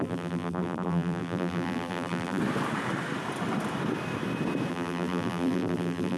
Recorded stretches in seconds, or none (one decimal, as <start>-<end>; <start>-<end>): 2.4-4.7